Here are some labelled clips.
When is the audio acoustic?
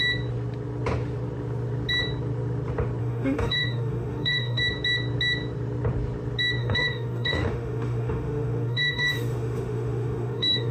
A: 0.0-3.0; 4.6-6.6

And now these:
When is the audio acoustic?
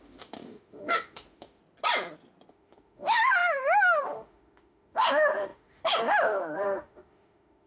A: 1.6-2.5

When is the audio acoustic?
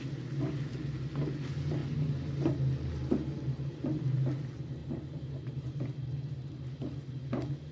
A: 0.0-4.8; 5.8-7.7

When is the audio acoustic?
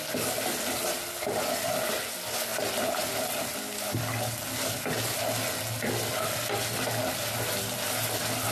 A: 0.0-8.5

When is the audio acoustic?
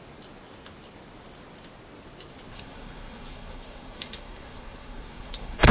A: 0.0-2.5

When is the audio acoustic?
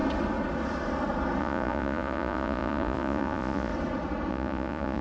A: 0.0-1.4; 3.7-4.3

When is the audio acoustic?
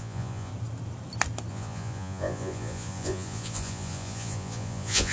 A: 0.5-1.5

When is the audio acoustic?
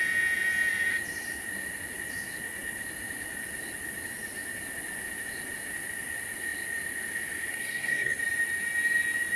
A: 0.0-7.5; 8.2-9.4